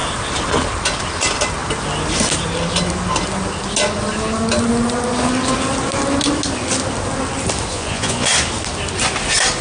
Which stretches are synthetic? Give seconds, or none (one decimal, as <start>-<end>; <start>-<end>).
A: 7.7-8.3